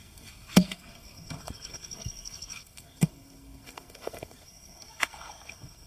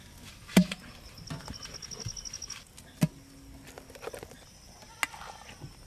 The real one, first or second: second